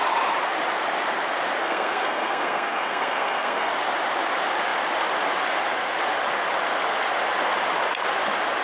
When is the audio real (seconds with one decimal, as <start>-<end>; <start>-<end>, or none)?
0.0-1.6; 3.7-8.6